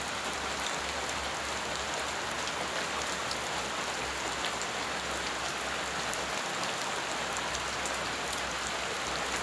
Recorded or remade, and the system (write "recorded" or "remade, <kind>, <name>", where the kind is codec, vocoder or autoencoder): recorded